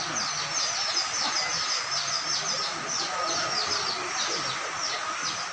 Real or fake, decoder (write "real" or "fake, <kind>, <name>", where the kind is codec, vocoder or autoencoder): real